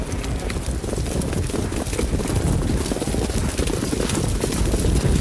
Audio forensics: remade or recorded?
recorded